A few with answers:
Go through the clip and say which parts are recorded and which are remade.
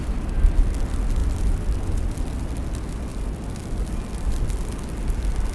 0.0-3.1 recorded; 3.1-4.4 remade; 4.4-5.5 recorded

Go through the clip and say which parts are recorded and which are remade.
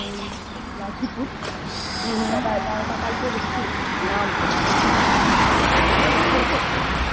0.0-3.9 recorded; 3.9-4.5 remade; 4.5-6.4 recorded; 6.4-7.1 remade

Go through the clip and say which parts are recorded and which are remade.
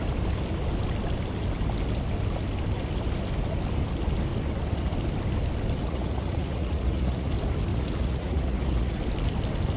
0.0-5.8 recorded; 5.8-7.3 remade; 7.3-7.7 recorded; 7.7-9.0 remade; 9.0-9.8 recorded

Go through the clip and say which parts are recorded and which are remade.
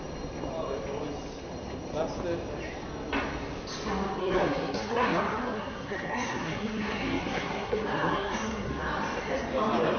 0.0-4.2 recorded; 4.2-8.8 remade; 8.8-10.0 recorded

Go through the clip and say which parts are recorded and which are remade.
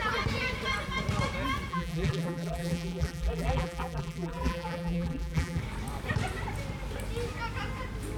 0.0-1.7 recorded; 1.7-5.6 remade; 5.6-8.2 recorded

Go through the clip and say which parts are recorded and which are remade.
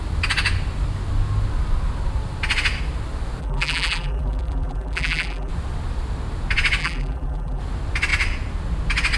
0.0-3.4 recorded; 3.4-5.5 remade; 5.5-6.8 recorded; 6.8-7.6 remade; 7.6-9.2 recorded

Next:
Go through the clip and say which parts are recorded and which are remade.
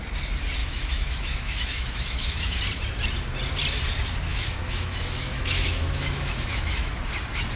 0.0-0.6 recorded; 0.6-2.6 remade; 2.6-4.3 recorded; 4.3-7.0 remade; 7.0-7.6 recorded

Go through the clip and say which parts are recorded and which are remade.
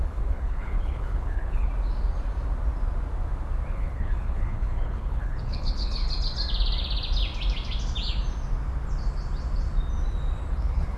0.0-1.7 remade; 1.7-3.7 recorded; 3.7-6.0 remade; 6.0-10.5 recorded; 10.5-11.0 remade